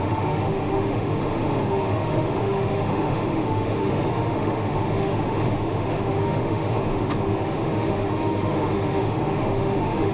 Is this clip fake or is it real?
fake